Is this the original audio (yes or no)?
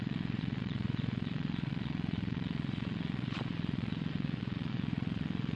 no